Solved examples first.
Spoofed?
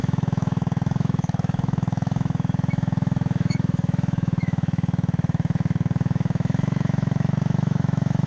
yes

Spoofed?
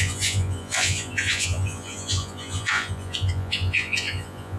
yes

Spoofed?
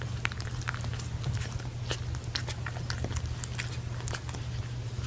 no